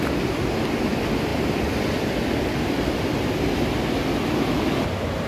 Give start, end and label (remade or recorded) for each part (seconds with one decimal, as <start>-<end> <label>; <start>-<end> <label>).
0.0-1.3 recorded; 1.3-2.0 remade; 2.0-5.3 recorded